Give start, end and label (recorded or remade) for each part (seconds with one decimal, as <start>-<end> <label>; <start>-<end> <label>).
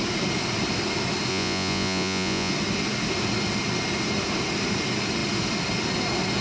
0.0-1.3 recorded; 1.3-2.5 remade; 2.5-6.4 recorded